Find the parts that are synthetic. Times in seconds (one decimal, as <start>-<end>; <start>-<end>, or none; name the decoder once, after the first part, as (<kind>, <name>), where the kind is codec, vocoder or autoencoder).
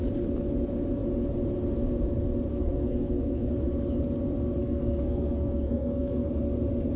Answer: 2.5-3.5 (codec, SNAC); 4.6-6.3